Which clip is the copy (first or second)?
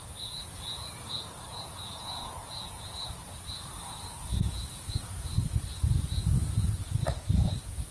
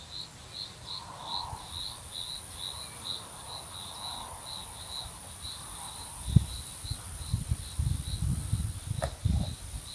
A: first